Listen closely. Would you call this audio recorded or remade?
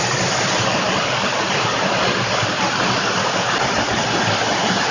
recorded